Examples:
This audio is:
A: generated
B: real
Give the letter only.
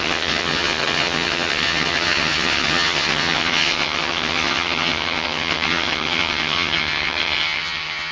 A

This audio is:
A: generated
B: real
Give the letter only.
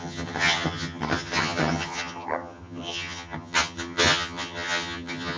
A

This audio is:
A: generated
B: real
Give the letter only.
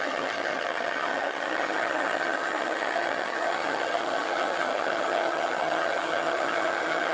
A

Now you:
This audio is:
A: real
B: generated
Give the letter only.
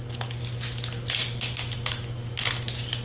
A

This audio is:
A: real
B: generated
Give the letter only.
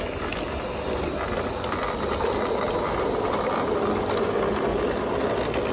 A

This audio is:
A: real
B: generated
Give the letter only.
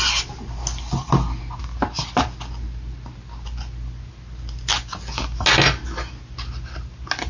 A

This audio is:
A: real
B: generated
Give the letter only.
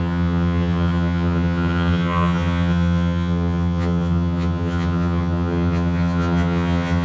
B